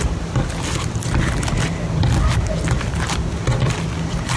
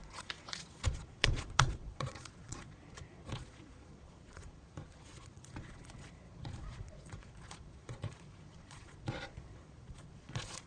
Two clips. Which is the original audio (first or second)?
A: first